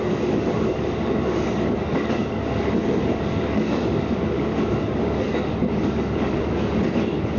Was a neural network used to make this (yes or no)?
yes